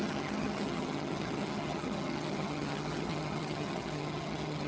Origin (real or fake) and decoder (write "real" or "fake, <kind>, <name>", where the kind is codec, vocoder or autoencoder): fake, vocoder, HiFi-GAN